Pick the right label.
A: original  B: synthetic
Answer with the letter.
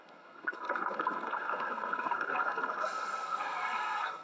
B